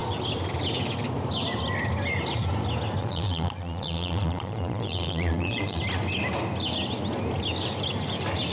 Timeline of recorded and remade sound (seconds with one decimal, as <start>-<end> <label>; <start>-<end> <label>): 0.0-3.0 recorded; 3.0-5.8 remade; 5.8-8.5 recorded